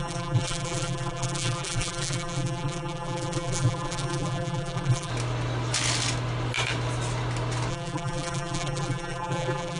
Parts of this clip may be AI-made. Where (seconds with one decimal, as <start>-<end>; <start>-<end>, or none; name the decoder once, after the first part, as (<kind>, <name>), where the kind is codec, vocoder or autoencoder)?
0.0-5.1 (vocoder, BigVGAN v2); 7.7-9.8